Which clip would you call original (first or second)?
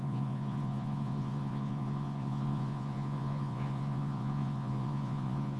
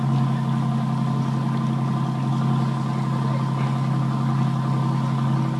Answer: second